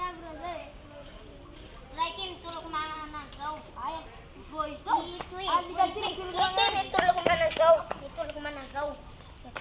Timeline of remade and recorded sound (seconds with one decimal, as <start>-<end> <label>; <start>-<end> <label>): 0.0-0.6 recorded; 0.6-1.2 remade; 1.2-9.6 recorded